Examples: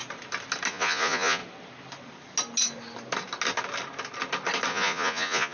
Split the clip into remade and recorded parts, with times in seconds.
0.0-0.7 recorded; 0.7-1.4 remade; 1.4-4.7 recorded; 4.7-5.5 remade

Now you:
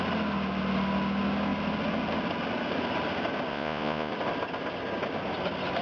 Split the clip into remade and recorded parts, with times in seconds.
0.0-3.5 recorded; 3.5-4.1 remade; 4.1-5.8 recorded